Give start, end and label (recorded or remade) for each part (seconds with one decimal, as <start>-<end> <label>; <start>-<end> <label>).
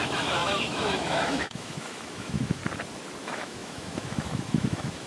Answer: 0.0-2.6 remade; 2.6-3.2 recorded; 3.2-5.1 remade